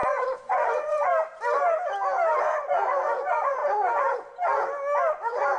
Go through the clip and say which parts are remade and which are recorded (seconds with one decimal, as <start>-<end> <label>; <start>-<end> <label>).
0.0-1.1 remade; 1.1-2.4 recorded; 2.4-3.6 remade; 3.6-5.1 recorded; 5.1-5.6 remade